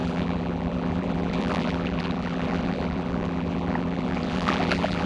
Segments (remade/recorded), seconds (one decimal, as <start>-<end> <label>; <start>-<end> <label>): 0.0-5.1 remade